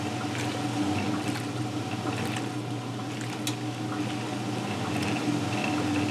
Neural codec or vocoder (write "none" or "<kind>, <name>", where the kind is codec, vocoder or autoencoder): none